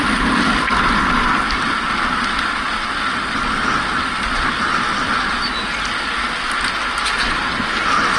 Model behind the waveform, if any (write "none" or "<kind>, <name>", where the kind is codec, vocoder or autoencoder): none